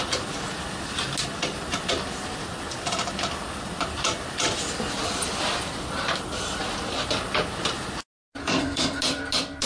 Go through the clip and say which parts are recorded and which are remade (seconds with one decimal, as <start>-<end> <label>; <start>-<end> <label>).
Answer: 0.0-8.4 recorded; 8.4-9.0 remade; 9.0-9.7 recorded